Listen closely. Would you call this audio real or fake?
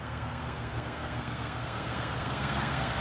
fake